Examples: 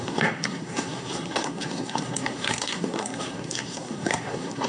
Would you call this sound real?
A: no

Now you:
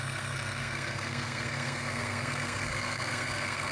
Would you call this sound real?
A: no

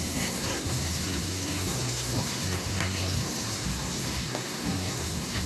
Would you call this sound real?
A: no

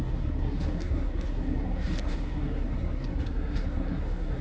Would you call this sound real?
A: no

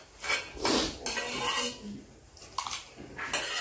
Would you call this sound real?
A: yes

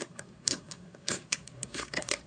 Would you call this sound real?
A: no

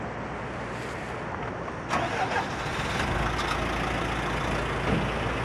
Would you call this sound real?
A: yes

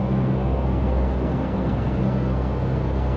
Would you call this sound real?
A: no